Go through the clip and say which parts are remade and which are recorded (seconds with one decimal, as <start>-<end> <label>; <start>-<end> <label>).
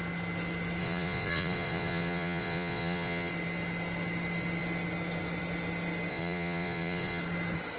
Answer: 0.0-0.8 recorded; 0.8-3.3 remade; 3.3-6.1 recorded; 6.1-7.2 remade; 7.2-7.8 recorded